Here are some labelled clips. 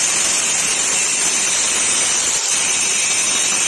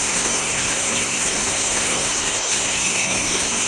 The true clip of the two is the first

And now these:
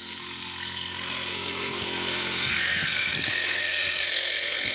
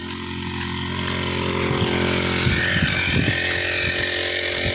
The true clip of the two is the second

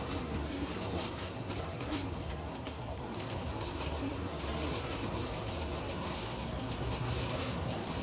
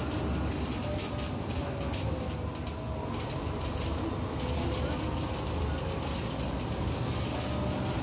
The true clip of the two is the second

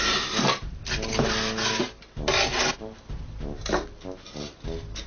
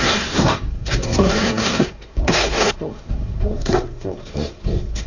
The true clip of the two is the first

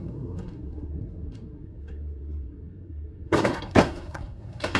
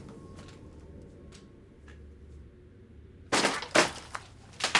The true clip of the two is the second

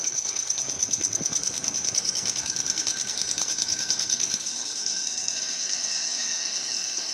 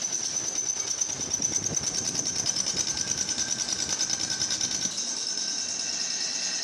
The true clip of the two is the second